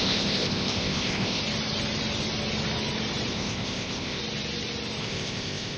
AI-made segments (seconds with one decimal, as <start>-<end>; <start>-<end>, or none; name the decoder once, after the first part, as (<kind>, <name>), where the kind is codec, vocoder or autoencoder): 0.0-1.4 (codec, ZipCodec); 3.3-4.2; 5.0-5.8